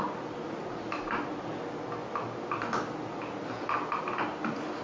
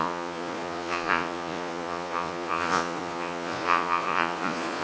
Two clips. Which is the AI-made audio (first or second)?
second